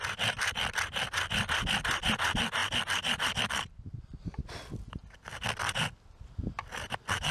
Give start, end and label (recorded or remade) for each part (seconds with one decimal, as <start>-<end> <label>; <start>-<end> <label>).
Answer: 0.0-7.3 recorded

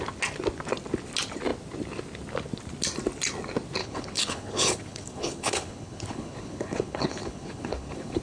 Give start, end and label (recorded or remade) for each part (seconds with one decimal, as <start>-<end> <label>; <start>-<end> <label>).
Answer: 0.0-3.8 recorded; 3.8-8.2 remade

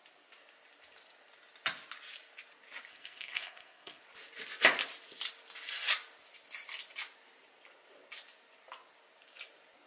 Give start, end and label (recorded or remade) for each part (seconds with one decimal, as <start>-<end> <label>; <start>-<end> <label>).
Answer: 0.0-2.9 recorded; 2.9-4.0 remade; 4.0-9.9 recorded

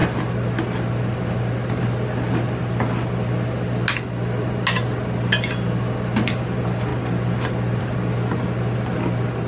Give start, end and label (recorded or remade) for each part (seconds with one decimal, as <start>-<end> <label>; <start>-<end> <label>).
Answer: 0.0-9.5 recorded

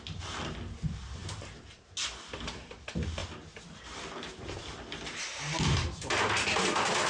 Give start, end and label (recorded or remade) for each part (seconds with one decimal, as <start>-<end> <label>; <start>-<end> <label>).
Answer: 0.0-7.1 recorded

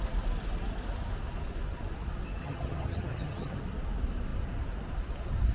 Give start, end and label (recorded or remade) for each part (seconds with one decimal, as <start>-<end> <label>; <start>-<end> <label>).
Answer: 0.0-2.4 recorded; 2.4-3.6 remade; 3.6-5.5 recorded